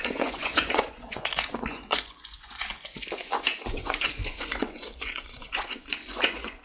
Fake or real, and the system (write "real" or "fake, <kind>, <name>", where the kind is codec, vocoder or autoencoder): fake, vocoder, Vocos